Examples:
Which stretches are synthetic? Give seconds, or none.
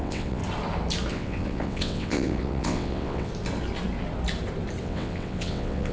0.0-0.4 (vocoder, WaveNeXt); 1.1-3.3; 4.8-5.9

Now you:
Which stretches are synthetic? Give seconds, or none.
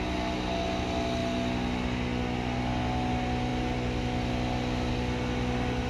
none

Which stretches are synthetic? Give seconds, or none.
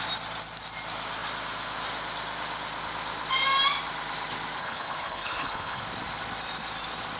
4.6-5.8 (codec, HILCodec)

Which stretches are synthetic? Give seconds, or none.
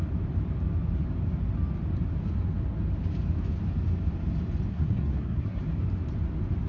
4.7-5.6 (codec, SNAC)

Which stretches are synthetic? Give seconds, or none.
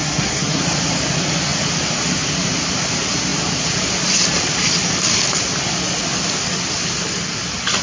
0.0-0.6 (codec, SNAC)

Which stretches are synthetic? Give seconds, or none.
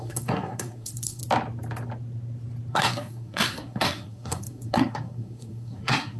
0.0-1.2 (codec, SNAC); 2.7-6.2